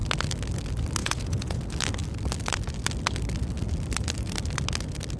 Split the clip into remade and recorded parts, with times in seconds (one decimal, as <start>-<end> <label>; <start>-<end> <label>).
0.0-1.0 recorded; 1.0-1.6 remade; 1.6-5.2 recorded